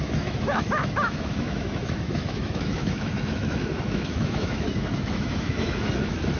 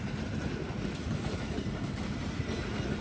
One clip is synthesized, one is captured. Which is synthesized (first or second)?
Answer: first